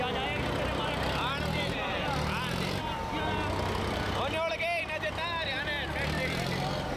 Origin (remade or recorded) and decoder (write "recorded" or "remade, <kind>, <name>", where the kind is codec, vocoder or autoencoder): recorded